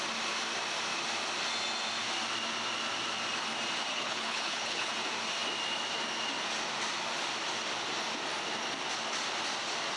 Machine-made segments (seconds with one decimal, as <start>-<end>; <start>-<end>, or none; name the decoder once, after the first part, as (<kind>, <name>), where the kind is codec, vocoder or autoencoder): 3.9-4.9 (codec, HILCodec)